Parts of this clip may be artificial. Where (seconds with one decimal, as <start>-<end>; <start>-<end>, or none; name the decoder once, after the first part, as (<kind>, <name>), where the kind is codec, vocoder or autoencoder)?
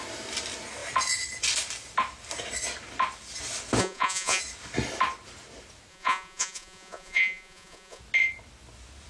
3.8-4.4 (vocoder, Vocos); 5.9-8.0